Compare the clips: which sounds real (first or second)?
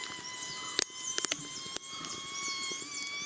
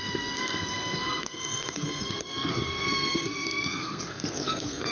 first